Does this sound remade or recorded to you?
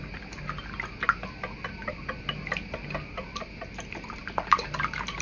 recorded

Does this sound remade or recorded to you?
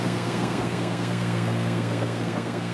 remade